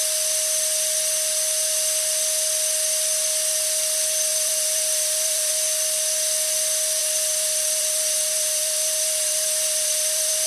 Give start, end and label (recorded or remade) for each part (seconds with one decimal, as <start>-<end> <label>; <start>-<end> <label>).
0.0-4.3 recorded; 4.3-5.5 remade; 5.5-7.0 recorded; 7.0-10.5 remade